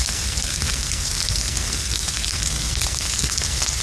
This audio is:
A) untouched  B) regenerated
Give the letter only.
B